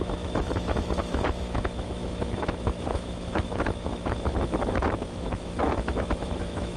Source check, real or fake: fake